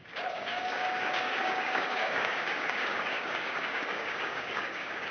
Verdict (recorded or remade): remade